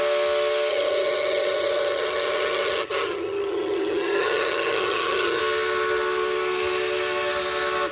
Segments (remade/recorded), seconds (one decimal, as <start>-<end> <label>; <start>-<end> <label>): 0.0-0.7 recorded; 0.7-5.4 remade; 5.4-7.9 recorded